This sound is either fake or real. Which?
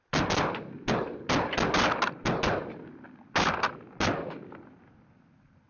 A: real